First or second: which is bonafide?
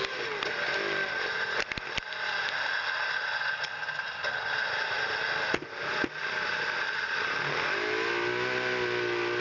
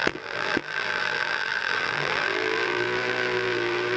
first